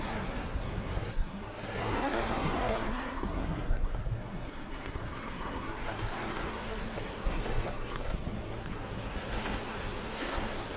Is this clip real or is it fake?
fake